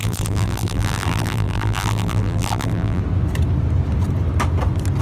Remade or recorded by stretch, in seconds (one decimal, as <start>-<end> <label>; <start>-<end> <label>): 0.0-3.0 remade; 3.0-5.0 recorded